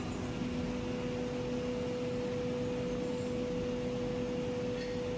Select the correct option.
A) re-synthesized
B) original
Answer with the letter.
B